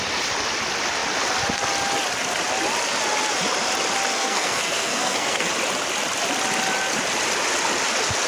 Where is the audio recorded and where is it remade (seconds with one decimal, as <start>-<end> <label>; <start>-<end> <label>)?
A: 0.0-4.1 recorded; 4.1-5.5 remade; 5.5-8.3 recorded